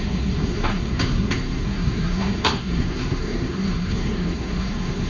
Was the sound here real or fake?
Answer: fake